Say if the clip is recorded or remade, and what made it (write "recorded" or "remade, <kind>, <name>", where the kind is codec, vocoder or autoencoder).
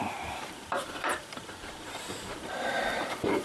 remade, vocoder, BigVGAN v2